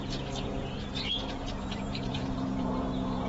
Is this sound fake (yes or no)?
yes